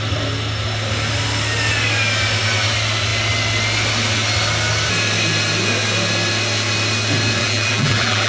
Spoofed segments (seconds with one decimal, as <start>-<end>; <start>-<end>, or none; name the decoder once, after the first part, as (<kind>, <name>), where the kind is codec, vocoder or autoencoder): 7.4-8.3 (vocoder, BigVGAN v2)